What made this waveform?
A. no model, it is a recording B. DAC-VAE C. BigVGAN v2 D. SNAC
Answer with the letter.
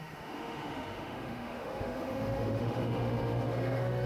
B